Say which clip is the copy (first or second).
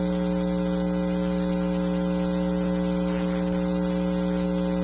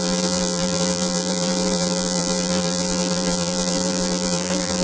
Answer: second